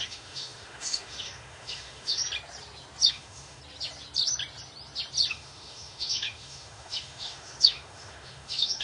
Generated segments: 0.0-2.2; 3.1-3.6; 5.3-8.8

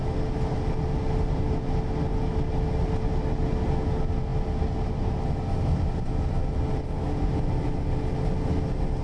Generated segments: none

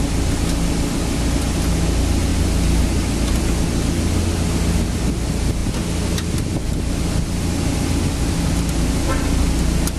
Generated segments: none